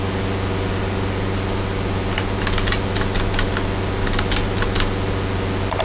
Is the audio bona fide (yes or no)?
yes